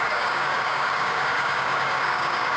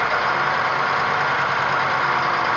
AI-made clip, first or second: first